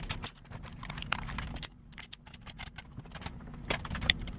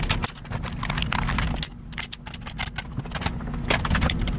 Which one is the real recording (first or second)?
second